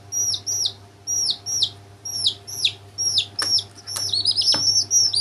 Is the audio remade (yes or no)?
no